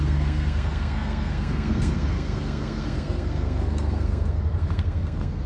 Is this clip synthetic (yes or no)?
yes